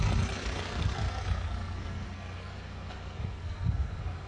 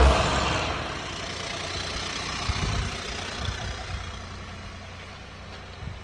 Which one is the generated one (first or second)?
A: first